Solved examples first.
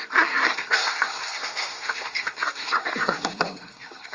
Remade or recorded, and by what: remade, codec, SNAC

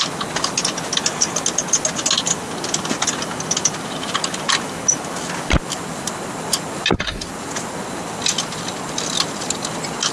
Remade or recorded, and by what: recorded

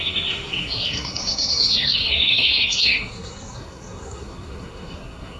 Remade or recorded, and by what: remade, codec, SNAC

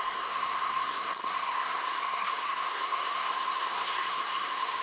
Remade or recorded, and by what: remade, codec, SNAC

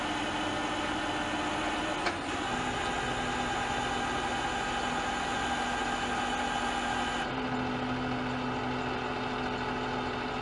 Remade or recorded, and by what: recorded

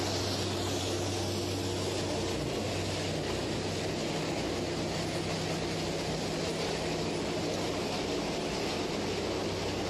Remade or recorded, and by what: recorded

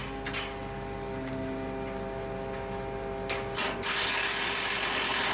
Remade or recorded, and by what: recorded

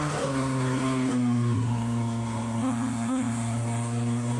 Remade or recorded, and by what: remade, codec, SNAC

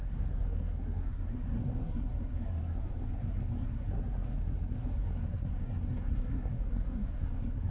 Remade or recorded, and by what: remade, codec, SNAC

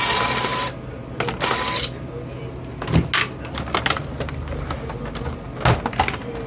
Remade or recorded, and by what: recorded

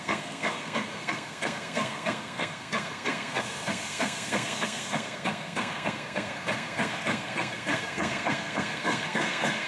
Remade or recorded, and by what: remade, codec, SNAC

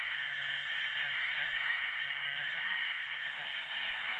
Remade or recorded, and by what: remade, codec, SNAC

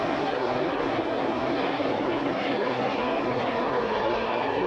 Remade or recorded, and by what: remade, codec, SNAC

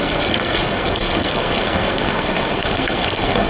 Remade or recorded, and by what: remade, codec, SNAC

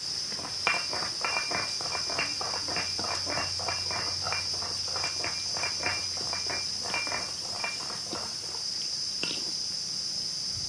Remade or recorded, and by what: recorded